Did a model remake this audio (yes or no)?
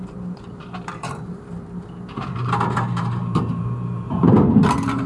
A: yes